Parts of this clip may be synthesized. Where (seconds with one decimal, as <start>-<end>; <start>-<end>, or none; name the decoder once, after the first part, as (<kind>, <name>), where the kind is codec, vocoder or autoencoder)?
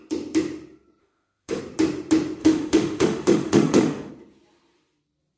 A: 1.0-1.6 (autoencoder, DAC-VAE); 2.4-4.1